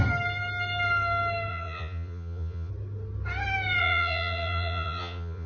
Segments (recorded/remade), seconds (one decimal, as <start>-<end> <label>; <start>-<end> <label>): 0.0-1.5 recorded; 1.5-2.7 remade; 2.7-3.8 recorded; 3.8-5.5 remade